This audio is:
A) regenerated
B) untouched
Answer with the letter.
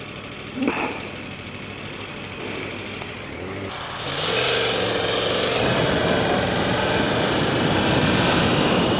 B